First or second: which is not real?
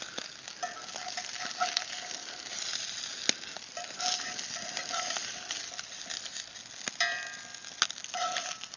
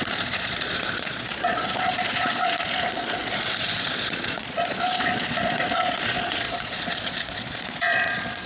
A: second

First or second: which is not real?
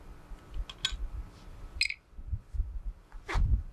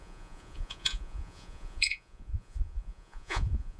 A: second